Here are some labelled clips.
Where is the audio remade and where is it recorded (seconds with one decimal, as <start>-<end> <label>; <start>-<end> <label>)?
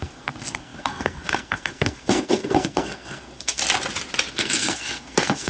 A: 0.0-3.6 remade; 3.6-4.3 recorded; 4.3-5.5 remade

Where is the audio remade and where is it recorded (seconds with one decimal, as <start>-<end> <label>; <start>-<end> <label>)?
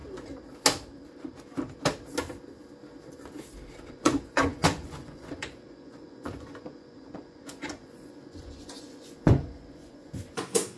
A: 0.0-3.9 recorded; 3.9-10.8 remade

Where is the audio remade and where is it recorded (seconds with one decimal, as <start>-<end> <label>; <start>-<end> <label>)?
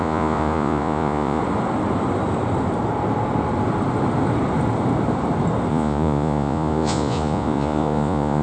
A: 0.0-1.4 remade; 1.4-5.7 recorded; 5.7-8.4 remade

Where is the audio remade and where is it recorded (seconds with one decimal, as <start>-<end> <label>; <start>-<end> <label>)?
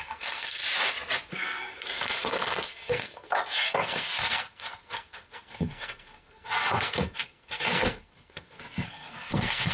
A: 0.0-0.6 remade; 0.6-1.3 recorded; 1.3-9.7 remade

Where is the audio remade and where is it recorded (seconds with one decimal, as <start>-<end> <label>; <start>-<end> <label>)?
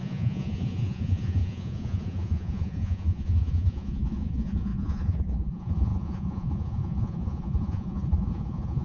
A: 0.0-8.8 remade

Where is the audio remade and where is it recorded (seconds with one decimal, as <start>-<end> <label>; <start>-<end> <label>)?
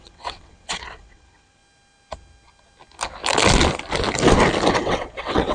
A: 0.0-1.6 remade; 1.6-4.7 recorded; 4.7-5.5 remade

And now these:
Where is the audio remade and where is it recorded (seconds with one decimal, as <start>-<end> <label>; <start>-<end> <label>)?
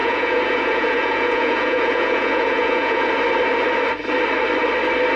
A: 0.0-3.1 remade; 3.1-5.2 recorded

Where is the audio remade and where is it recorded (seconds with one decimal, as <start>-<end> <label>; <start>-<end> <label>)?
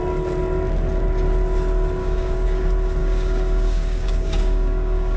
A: 0.0-2.0 recorded; 2.0-2.6 remade; 2.6-3.0 recorded; 3.0-5.2 remade